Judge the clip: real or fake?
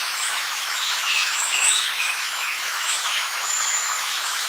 fake